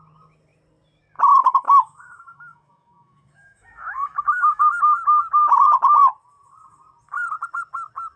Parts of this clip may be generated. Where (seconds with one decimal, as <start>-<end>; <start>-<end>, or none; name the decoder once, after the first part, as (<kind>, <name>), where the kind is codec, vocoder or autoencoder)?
1.3-4.6 (autoencoder, DAC-VAE)